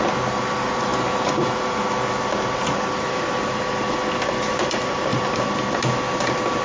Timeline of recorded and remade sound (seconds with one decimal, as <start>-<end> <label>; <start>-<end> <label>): 0.0-6.6 recorded